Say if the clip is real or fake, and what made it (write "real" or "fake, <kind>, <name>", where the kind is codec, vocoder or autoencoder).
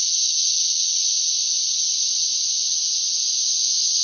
real